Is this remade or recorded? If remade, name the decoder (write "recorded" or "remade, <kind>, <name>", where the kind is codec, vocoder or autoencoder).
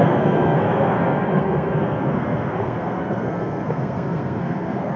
remade, codec, SNAC